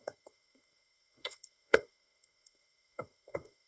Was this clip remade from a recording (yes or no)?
yes